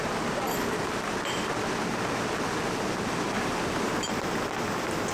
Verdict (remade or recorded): recorded